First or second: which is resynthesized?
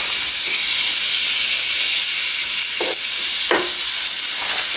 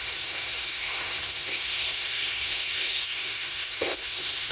second